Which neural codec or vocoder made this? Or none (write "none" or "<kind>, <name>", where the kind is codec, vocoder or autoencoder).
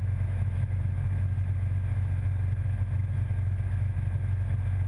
autoencoder, DAC-VAE